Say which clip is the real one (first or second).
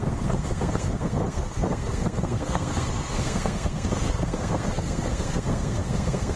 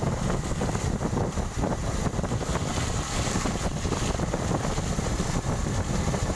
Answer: second